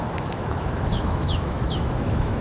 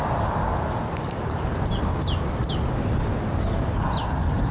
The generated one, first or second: first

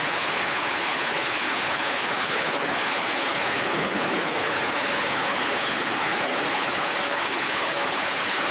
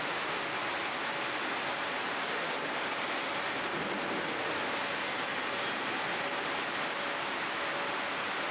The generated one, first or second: first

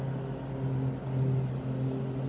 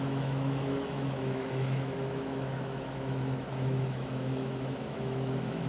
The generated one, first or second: second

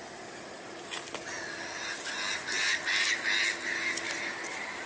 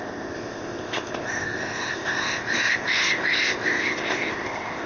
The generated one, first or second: second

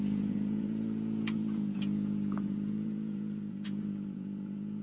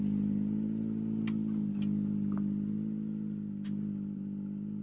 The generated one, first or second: first